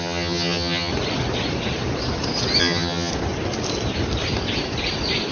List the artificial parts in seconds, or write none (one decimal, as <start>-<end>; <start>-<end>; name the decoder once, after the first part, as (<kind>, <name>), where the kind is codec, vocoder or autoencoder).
0.0-0.9 (vocoder, HiFi-GAN); 2.6-3.1